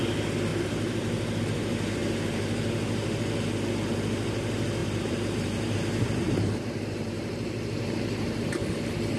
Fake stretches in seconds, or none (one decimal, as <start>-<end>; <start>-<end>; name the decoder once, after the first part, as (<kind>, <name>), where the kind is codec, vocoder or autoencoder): 0.5-1.4 (vocoder, BigVGAN v2); 4.8-9.2